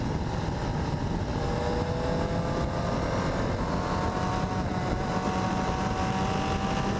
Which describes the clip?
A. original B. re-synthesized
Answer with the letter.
A